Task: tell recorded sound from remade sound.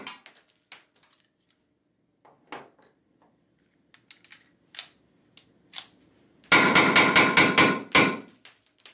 recorded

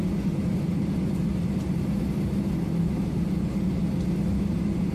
recorded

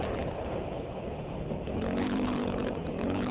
remade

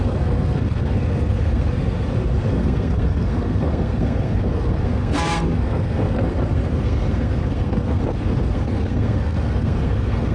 remade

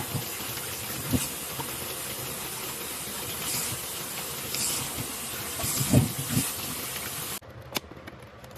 recorded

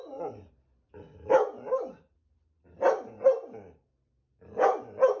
recorded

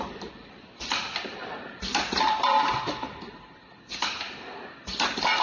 remade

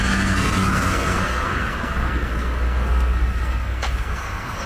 remade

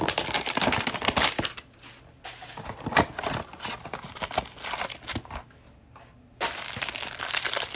recorded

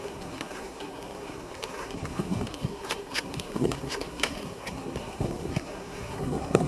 remade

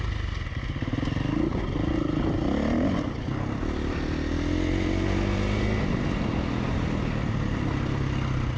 recorded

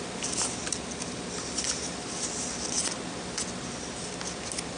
recorded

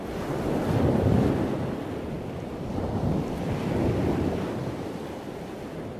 recorded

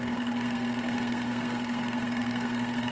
remade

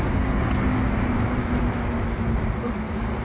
recorded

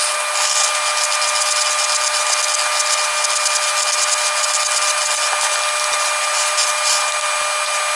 recorded